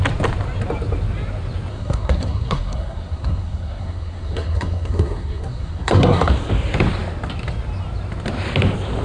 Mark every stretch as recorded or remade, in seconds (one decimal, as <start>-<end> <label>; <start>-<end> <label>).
0.0-1.7 recorded; 1.7-6.3 remade; 6.3-9.0 recorded